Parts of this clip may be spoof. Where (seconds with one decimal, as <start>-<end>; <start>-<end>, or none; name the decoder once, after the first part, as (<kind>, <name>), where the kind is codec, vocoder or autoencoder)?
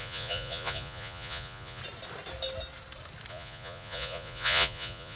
0.0-1.8 (vocoder, Vocos); 3.3-5.2